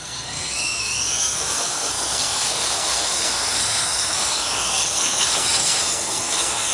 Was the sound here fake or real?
fake